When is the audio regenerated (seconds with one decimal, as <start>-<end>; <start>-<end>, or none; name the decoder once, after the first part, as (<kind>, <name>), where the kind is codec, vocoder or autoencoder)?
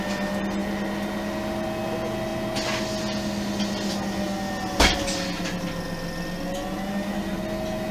none